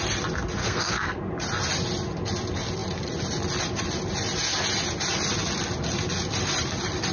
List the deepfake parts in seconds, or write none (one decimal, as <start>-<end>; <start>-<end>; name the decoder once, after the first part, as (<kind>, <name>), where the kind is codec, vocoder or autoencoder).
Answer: 0.6-1.2 (codec, SNAC)